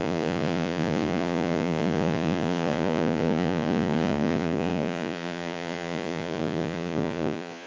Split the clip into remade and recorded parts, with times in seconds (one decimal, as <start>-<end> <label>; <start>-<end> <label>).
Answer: 0.0-7.7 remade